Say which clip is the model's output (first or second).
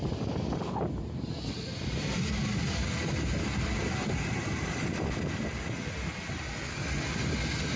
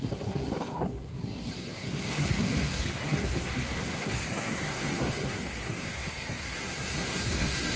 second